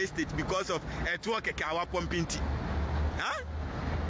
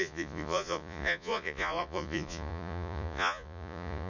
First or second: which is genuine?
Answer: first